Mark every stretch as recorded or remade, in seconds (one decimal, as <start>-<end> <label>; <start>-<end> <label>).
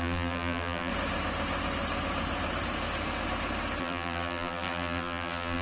0.0-0.9 remade; 0.9-3.8 recorded; 3.8-5.6 remade